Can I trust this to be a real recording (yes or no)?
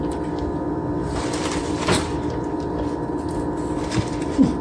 no